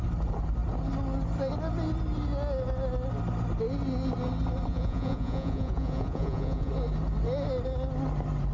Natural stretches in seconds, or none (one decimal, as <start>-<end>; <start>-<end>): 0.0-4.7; 6.7-8.5